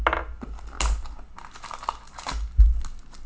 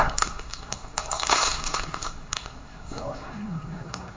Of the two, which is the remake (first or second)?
second